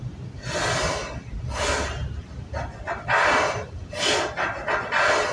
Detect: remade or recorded remade